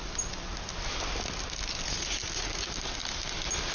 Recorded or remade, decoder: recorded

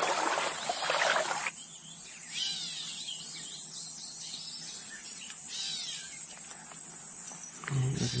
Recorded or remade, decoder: recorded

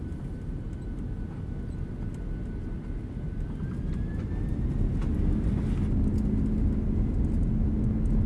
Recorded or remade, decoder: recorded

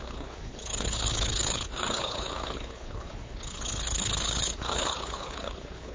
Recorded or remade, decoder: remade, codec, HILCodec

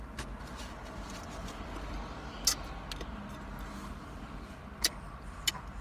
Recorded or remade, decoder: recorded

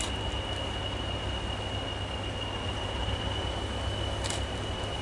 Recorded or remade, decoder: recorded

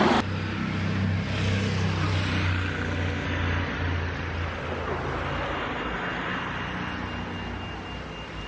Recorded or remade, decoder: recorded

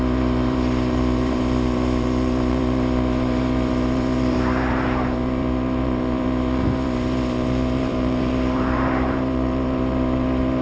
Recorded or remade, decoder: remade, vocoder, BigVGAN v2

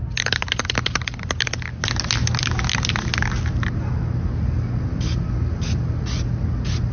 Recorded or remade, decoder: recorded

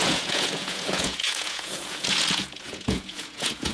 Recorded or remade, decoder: remade, vocoder, Vocos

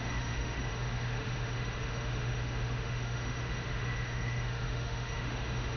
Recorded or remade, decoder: remade, autoencoder, DAC-VAE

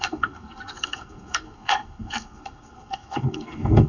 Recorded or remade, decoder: remade, codec, SNAC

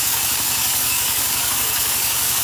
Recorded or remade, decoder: remade, codec, DAC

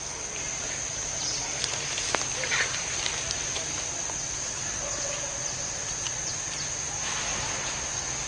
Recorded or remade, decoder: recorded